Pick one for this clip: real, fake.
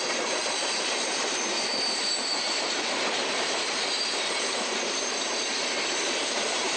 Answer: fake